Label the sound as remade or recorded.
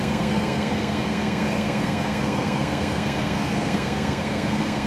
remade